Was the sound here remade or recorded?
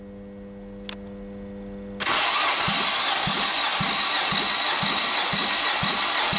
recorded